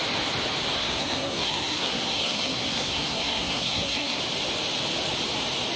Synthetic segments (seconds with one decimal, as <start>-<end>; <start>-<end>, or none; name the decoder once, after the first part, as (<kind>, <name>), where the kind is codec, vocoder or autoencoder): 0.7-4.2 (codec, SNAC)